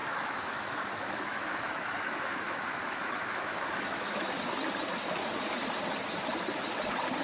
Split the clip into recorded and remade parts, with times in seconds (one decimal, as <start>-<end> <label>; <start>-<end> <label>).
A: 0.0-4.3 remade; 4.3-7.2 recorded